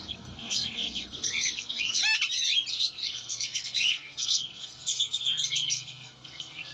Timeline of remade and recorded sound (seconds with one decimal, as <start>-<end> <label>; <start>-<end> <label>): 0.0-2.0 remade; 2.0-2.7 recorded; 2.7-6.7 remade